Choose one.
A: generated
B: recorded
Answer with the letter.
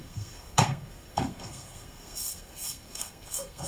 A